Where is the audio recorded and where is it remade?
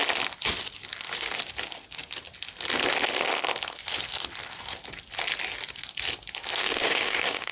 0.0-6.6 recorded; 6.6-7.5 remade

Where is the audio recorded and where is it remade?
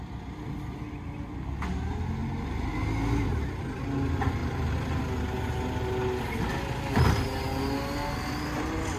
0.0-4.4 recorded; 4.4-5.0 remade; 5.0-9.0 recorded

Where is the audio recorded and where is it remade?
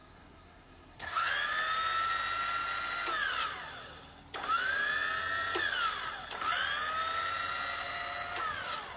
0.0-1.3 remade; 1.3-9.0 recorded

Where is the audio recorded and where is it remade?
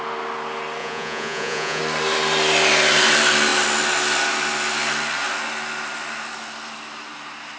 0.0-0.8 recorded; 0.8-1.8 remade; 1.8-7.6 recorded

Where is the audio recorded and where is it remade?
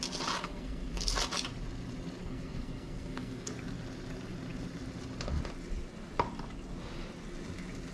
0.0-0.4 recorded; 0.4-1.1 remade; 1.1-2.2 recorded; 2.2-3.5 remade; 3.5-7.9 recorded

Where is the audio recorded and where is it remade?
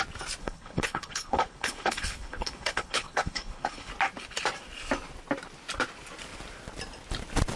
0.0-0.4 recorded; 0.4-3.9 remade; 3.9-7.6 recorded